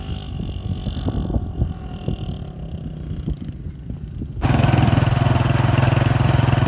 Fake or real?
real